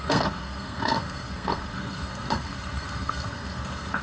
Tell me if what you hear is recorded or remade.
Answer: remade